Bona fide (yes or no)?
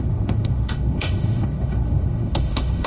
no